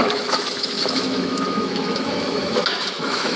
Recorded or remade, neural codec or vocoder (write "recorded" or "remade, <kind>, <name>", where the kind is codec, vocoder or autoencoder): remade, autoencoder, DAC-VAE